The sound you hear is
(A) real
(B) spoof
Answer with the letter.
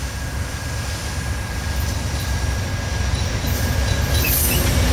A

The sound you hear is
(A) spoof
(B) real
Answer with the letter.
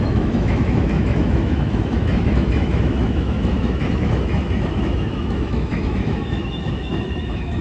A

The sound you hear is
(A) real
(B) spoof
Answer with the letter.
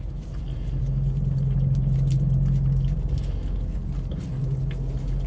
A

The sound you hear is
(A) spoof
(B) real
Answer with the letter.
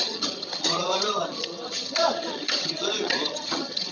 A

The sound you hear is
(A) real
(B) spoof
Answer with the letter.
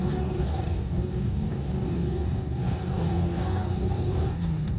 B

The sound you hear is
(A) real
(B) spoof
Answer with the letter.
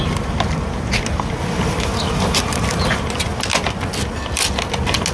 A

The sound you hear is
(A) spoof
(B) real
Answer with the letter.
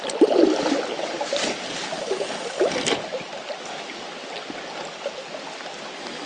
B